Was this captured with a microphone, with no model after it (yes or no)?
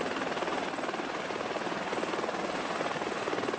yes